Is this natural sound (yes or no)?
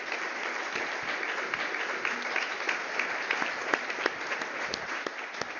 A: yes